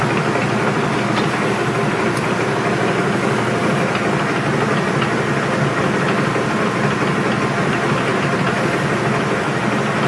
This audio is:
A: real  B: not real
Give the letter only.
A